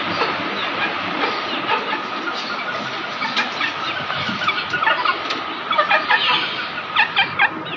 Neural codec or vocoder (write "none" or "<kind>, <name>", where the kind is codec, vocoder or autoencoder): none